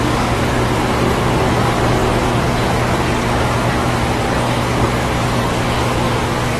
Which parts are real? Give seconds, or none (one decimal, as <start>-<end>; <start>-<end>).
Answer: 0.0-6.6